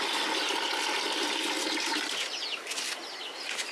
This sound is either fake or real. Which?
real